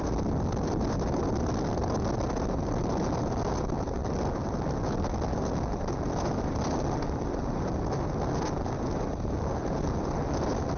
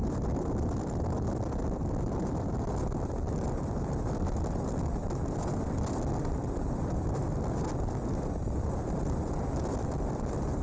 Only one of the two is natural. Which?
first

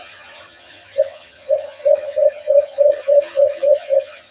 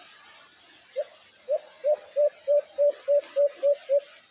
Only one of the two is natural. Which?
second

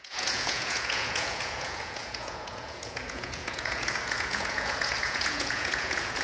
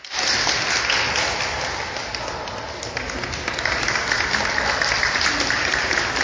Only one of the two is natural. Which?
second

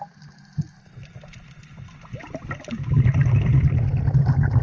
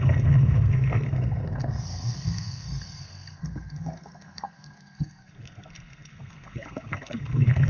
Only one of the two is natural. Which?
first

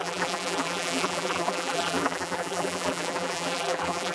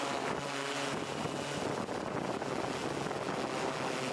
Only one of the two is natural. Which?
second